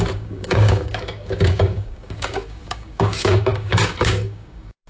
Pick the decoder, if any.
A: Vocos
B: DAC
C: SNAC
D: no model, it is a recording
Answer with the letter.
B